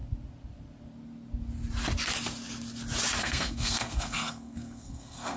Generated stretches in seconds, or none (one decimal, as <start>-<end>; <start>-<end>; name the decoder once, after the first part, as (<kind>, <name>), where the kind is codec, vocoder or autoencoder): 3.2-5.4 (codec, SNAC)